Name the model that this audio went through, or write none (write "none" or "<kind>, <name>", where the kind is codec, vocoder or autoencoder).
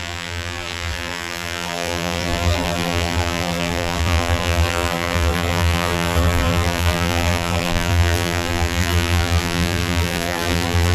vocoder, BigVGAN v2